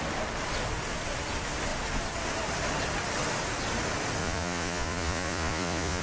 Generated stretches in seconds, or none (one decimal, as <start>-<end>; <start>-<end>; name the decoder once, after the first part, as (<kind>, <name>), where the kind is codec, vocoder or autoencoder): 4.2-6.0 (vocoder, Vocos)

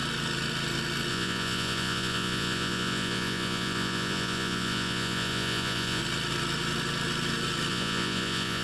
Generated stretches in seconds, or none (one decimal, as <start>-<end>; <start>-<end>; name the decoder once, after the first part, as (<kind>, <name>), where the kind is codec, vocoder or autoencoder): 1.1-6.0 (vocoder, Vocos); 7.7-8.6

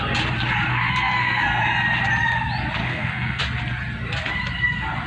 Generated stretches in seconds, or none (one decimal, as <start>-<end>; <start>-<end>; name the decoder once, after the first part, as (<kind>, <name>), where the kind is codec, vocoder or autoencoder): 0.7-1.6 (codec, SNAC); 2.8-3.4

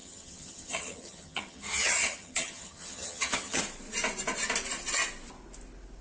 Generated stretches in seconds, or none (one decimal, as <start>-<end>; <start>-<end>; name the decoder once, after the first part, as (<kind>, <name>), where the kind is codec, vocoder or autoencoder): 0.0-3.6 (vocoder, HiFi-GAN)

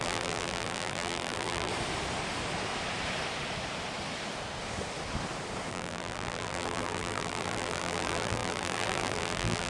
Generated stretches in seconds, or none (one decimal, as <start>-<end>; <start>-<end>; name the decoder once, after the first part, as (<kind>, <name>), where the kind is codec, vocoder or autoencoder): 0.0-1.7 (vocoder, BigVGAN v2); 5.7-9.7

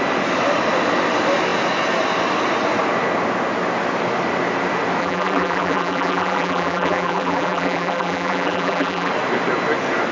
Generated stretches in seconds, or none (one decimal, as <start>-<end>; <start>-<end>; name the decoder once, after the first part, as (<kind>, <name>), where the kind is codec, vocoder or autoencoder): 5.0-9.1 (vocoder, BigVGAN v2)

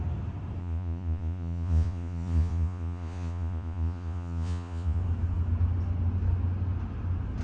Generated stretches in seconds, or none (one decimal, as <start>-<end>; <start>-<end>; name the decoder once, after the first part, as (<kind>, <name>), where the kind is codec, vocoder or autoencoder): 0.6-5.0 (vocoder, Vocos)